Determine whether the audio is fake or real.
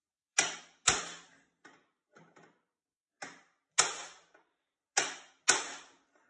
real